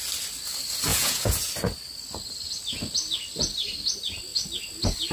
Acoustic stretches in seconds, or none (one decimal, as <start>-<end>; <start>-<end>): 0.0-0.9; 1.5-5.1